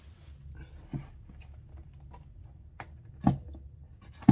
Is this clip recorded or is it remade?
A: recorded